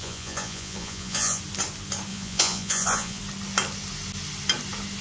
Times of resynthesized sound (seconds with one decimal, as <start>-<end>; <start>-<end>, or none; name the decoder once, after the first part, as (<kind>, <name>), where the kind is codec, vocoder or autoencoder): 0.0-1.4 (vocoder, Vocos); 2.1-3.2